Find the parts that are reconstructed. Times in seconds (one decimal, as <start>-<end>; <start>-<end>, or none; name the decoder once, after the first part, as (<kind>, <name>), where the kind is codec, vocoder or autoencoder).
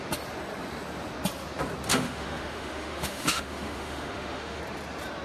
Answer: 1.9-4.6 (autoencoder, DAC-VAE)